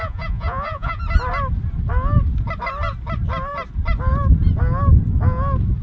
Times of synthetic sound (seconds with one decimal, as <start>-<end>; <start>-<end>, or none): 0.0-1.0